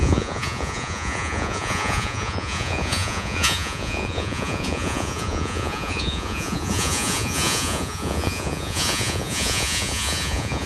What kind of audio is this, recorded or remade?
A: remade